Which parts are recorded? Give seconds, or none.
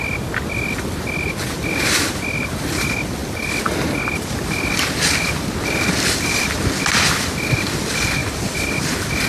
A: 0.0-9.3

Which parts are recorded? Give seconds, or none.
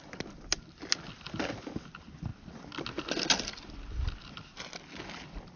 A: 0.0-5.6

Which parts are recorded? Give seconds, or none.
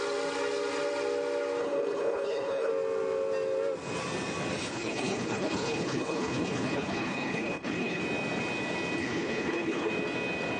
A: 0.0-1.6; 2.7-4.6; 8.0-9.0; 9.9-10.6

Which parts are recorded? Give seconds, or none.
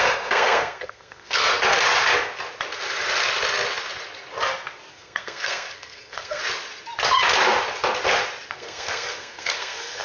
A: 1.5-4.9; 6.4-8.5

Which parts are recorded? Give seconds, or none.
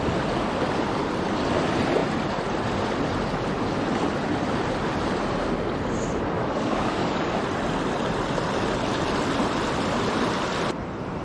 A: 0.0-6.4; 7.4-11.2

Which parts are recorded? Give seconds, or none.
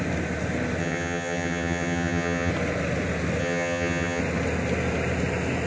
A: 0.0-0.8; 2.5-3.4; 4.2-5.7